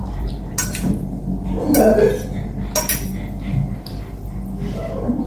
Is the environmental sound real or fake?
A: real